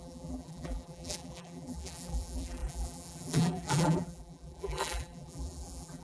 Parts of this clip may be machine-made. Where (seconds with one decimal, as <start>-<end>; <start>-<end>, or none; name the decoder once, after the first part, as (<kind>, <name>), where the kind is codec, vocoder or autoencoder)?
0.0-6.0 (vocoder, BigVGAN v2)

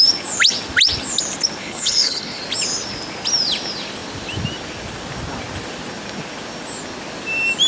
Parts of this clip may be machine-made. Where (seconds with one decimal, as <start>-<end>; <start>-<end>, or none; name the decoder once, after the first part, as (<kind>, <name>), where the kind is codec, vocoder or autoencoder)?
1.6-2.4 (codec, HILCodec)

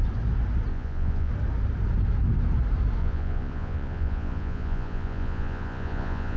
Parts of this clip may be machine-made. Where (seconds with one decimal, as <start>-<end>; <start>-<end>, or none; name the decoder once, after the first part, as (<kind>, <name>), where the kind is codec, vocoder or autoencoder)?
0.7-1.3 (vocoder, Vocos); 3.0-6.4

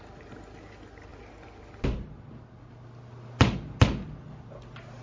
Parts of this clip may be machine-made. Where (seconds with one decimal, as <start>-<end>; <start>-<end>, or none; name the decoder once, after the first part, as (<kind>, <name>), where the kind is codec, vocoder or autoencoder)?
none

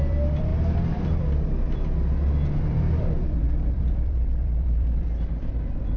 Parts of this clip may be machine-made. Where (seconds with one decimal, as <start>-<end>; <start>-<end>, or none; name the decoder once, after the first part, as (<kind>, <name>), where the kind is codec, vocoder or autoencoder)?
0.0-0.5 (vocoder, BigVGAN v2); 3.0-6.0

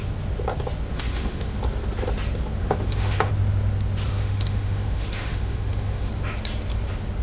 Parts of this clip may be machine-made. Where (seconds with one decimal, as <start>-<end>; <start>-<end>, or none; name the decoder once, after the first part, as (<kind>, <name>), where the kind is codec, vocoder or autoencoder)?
0.9-1.6 (autoencoder, DAC-VAE); 2.6-3.3; 4.1-6.1